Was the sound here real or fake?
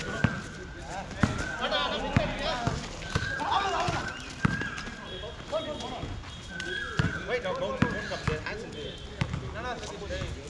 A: real